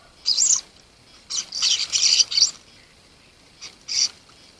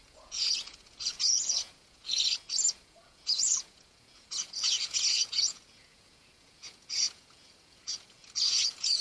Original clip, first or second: first